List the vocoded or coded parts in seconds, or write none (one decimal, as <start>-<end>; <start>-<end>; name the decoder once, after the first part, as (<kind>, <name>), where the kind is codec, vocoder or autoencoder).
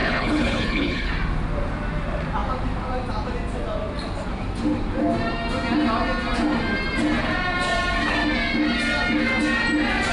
0.0-1.1 (codec, HILCodec)